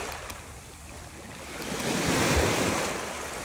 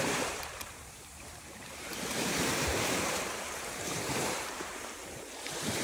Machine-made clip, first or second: second